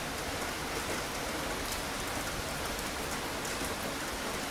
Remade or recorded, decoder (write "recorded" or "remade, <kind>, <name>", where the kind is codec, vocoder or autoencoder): recorded